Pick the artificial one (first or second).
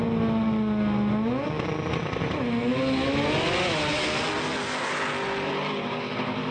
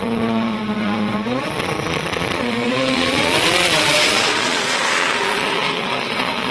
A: second